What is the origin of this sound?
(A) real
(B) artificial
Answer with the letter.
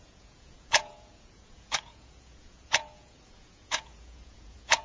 B